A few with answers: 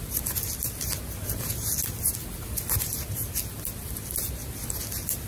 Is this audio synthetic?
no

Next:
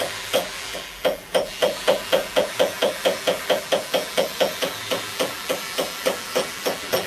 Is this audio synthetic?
yes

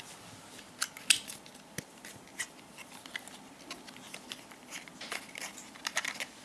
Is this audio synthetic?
no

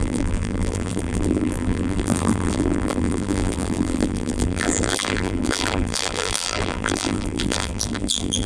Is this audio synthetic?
yes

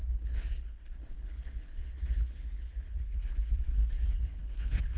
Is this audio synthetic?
yes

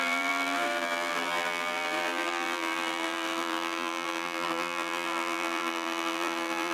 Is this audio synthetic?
yes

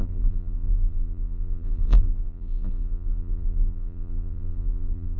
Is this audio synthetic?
yes